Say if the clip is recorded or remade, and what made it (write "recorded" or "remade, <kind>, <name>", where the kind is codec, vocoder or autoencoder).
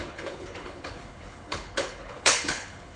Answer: remade, codec, HILCodec